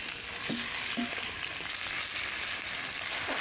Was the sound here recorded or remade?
recorded